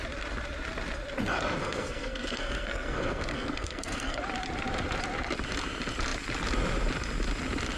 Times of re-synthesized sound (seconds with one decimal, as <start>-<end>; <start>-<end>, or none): 1.6-4.2